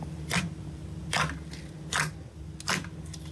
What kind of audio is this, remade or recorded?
recorded